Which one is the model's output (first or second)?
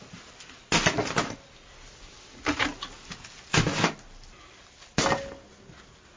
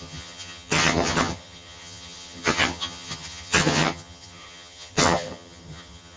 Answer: second